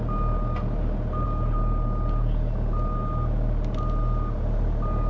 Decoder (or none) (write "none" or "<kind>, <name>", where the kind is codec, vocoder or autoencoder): none